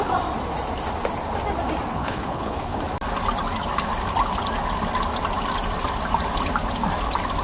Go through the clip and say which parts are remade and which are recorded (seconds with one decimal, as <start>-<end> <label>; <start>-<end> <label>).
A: 0.0-1.9 recorded; 1.9-2.8 remade; 2.8-7.4 recorded